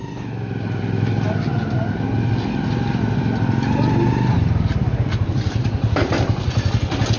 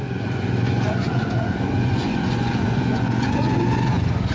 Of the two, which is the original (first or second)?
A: first